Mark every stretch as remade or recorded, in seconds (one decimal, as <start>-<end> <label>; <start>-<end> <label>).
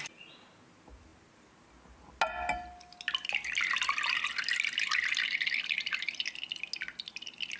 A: 0.0-7.6 recorded